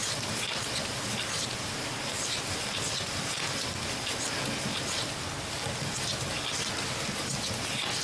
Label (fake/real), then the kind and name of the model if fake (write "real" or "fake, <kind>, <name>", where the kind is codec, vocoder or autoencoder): real